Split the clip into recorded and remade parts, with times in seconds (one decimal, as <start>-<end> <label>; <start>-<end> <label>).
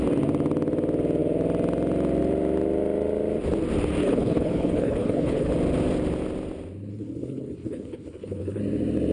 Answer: 0.0-4.0 recorded; 4.0-5.5 remade; 5.5-6.9 recorded; 6.9-8.6 remade; 8.6-9.1 recorded